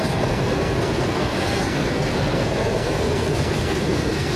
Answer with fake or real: fake